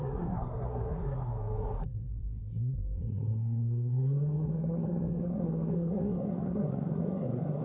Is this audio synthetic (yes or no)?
yes